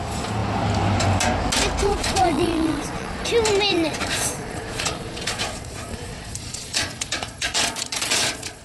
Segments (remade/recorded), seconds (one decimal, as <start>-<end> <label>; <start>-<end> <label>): 0.0-1.8 recorded; 1.8-3.3 remade; 3.3-3.7 recorded; 3.7-8.6 remade